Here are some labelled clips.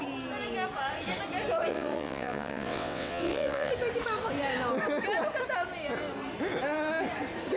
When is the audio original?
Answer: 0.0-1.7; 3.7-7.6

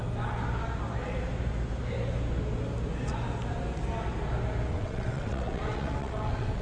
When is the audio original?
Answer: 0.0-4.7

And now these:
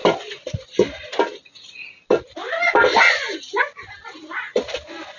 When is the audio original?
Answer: 0.0-5.2